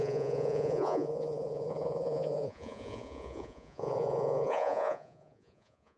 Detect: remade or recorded remade